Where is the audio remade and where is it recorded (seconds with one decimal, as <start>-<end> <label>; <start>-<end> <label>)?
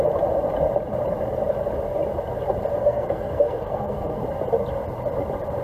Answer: 0.0-2.8 recorded; 2.8-4.2 remade; 4.2-5.6 recorded